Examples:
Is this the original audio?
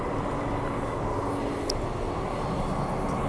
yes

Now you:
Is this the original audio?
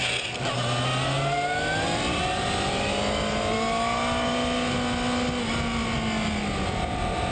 yes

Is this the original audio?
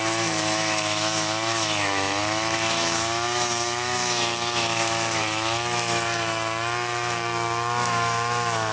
no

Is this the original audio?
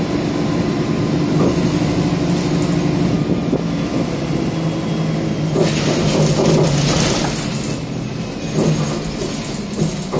yes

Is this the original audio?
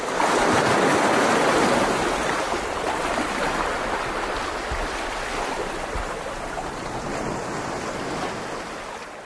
yes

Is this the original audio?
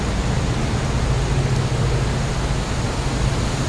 yes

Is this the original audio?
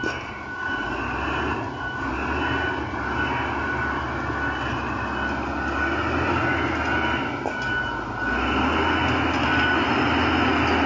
yes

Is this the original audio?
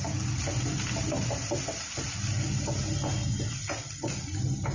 yes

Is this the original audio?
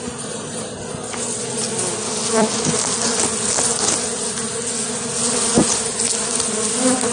yes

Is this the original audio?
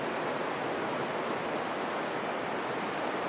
yes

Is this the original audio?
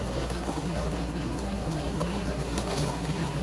no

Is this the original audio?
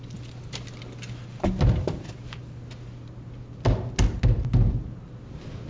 yes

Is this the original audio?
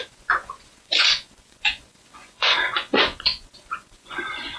no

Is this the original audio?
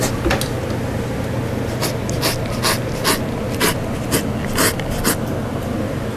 yes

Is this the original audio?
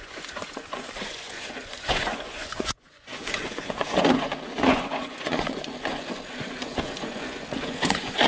no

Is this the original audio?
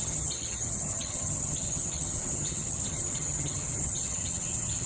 no